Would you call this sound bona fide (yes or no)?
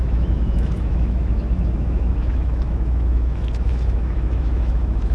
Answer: no